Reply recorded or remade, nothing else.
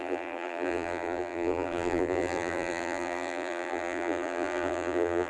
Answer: remade